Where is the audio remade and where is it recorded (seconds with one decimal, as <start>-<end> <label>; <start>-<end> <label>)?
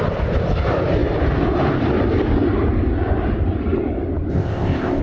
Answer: 0.0-4.3 recorded; 4.3-5.0 remade